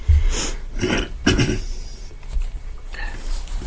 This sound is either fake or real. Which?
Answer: real